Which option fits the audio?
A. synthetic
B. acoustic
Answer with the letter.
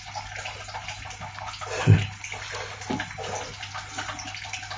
B